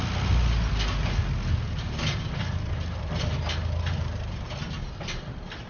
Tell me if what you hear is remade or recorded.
recorded